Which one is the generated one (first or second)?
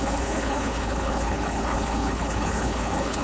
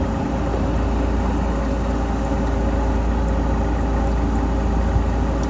first